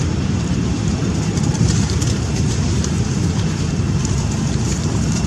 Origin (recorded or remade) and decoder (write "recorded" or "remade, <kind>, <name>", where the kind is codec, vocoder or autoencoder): remade, vocoder, BigVGAN v2